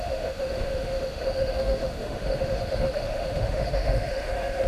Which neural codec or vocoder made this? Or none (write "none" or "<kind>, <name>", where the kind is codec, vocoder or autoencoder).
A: autoencoder, DAC-VAE